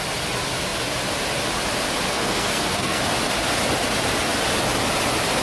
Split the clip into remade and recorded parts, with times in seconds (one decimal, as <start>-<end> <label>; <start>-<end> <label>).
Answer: 0.0-2.1 recorded; 2.1-3.0 remade; 3.0-5.4 recorded